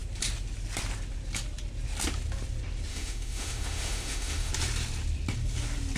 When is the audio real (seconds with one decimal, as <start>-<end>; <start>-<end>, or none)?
0.0-2.9; 4.5-6.0

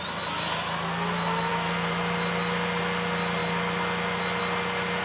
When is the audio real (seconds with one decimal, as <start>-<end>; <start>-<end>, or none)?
0.0-5.0

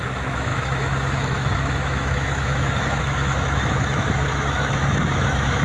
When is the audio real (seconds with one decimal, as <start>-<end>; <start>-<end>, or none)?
none

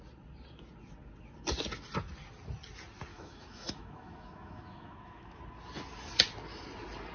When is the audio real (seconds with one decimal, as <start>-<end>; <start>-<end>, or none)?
0.0-3.1; 5.4-7.1